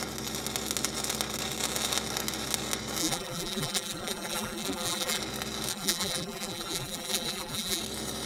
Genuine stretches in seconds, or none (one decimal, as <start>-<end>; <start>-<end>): 0.0-3.0; 5.2-5.7; 7.8-8.3